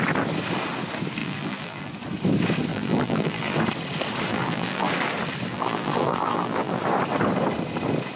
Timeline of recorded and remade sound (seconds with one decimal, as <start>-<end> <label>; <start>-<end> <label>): 0.0-1.2 recorded; 1.2-1.9 remade; 1.9-2.7 recorded; 2.7-3.6 remade; 3.6-4.3 recorded; 4.3-4.9 remade; 4.9-5.5 recorded; 5.5-6.8 remade; 6.8-8.2 recorded